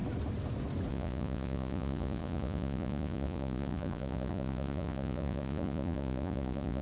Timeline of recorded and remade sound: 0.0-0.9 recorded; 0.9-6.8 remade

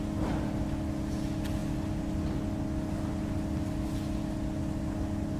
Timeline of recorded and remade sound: 0.0-5.4 recorded

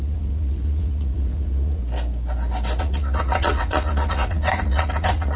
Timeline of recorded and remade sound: 0.0-1.8 remade; 1.8-2.8 recorded; 2.8-5.4 remade

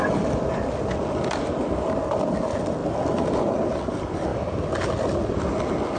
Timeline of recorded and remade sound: 0.0-6.0 recorded

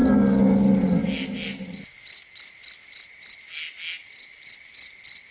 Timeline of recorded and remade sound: 0.0-5.3 recorded

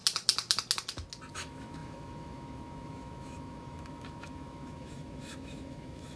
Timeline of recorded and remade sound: 0.0-1.3 recorded; 1.3-6.2 remade

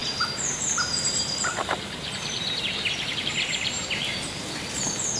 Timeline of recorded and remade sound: 0.0-0.5 recorded; 0.5-4.1 remade; 4.1-5.2 recorded